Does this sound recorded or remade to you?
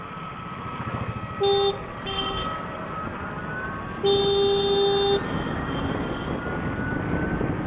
recorded